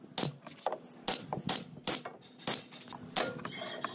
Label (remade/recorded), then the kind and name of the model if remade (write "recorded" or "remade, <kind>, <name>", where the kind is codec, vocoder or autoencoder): recorded